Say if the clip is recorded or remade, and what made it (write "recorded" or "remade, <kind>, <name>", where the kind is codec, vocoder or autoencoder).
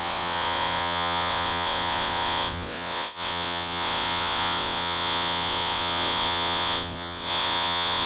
remade, vocoder, WaveNeXt